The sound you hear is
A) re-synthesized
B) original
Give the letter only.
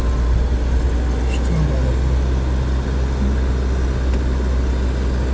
B